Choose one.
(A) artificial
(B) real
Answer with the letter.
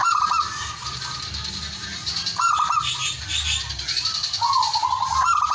B